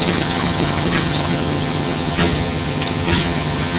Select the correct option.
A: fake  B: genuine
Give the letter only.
A